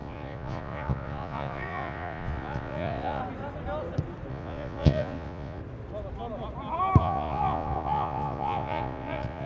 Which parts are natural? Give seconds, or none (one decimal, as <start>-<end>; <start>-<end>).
3.2-4.3; 5.6-7.0